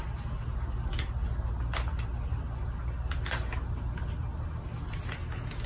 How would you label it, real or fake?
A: real